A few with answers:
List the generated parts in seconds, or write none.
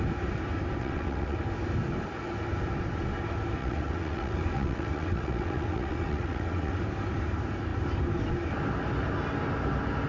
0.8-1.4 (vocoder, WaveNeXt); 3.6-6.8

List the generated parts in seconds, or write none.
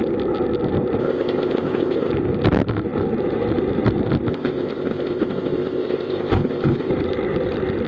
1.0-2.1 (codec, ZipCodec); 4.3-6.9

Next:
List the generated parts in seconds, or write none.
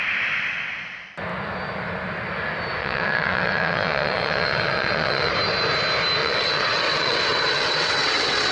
2.8-5.3 (vocoder, WaveNeXt); 6.2-8.5